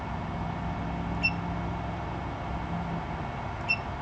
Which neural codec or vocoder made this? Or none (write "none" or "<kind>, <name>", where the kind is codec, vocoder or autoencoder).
none